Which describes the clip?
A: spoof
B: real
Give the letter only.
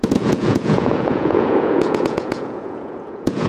A